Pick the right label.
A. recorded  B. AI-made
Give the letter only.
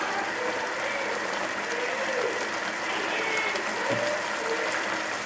A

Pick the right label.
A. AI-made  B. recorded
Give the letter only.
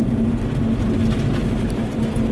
B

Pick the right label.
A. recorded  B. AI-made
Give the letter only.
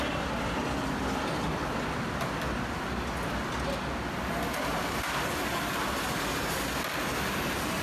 A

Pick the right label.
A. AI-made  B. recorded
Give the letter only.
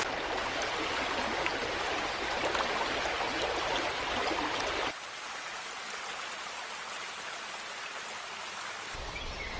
B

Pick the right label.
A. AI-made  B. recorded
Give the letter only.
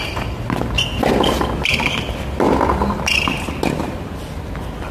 B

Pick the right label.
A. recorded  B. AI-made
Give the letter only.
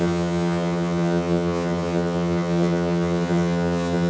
B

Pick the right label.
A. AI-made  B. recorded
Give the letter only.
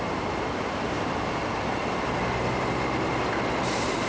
B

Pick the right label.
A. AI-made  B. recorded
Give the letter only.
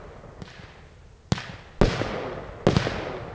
B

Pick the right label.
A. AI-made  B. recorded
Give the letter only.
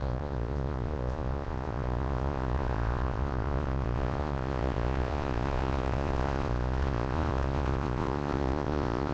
A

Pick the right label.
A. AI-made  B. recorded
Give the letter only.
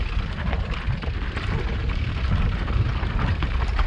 B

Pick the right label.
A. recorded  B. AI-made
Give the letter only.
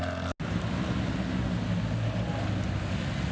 A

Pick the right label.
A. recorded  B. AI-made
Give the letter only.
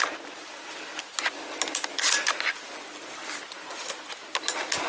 A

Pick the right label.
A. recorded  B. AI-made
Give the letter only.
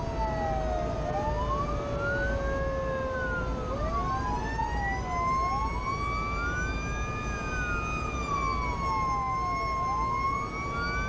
A